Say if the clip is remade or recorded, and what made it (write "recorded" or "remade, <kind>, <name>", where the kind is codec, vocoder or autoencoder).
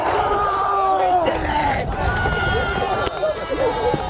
remade, vocoder, BigVGAN v2